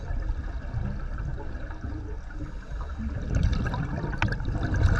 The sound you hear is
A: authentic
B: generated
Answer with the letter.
A